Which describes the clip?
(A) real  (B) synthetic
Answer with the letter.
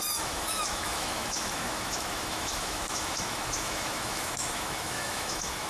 B